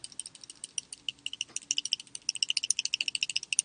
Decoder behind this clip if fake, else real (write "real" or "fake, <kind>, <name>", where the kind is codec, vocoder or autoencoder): real